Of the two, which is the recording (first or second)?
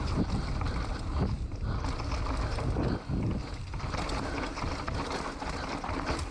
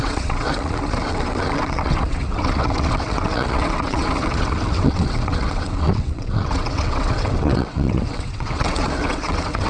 first